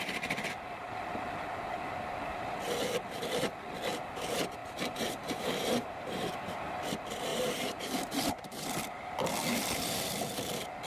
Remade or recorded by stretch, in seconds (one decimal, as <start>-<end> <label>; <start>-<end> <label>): 0.0-4.6 recorded; 4.6-6.6 remade; 6.6-7.3 recorded; 7.3-9.3 remade; 9.3-10.9 recorded